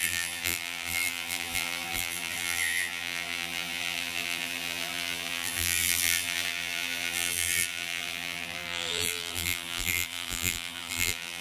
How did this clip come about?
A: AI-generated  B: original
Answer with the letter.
A